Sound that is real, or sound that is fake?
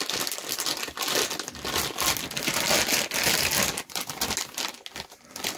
real